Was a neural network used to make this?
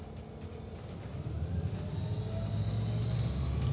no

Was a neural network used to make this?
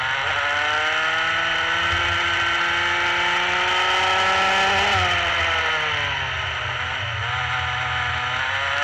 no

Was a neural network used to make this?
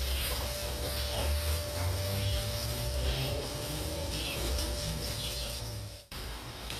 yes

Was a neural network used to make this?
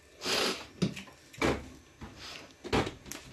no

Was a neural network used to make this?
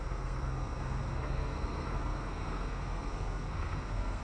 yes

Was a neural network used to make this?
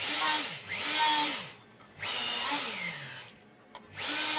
no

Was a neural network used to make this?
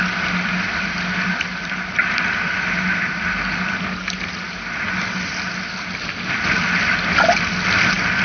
no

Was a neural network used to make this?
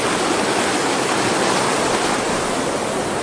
no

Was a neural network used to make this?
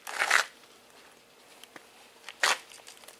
no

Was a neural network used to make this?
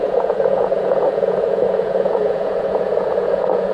yes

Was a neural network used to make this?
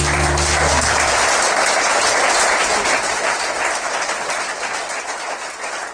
no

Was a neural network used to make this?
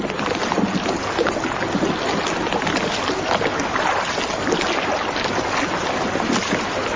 no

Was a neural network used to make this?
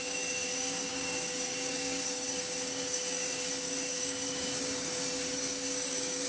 yes